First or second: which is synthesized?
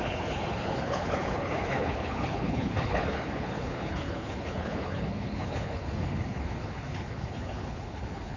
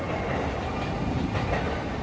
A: first